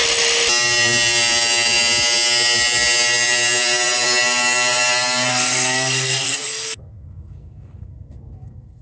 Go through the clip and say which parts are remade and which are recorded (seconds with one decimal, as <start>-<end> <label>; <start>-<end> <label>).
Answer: 0.0-5.3 recorded; 5.3-8.8 remade